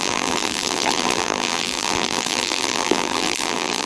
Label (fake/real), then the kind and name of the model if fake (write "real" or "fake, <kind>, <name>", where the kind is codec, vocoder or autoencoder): fake, vocoder, BigVGAN v2